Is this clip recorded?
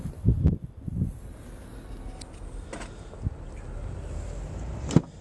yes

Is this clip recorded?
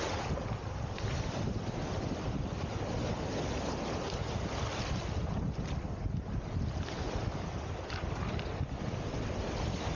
yes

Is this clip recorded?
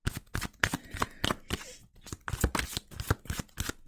yes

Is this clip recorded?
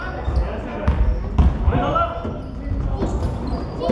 yes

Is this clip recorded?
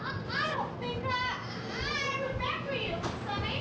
yes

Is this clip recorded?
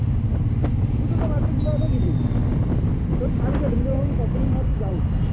yes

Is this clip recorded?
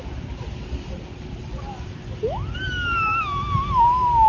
yes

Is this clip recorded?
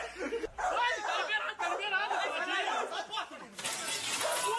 yes